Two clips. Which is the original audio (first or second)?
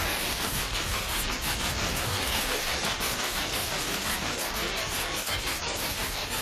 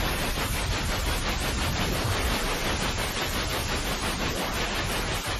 second